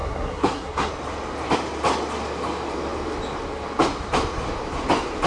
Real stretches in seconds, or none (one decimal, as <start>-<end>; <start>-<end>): 0.9-5.3